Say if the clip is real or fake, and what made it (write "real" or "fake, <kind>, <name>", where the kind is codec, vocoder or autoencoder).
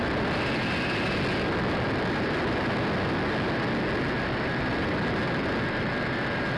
real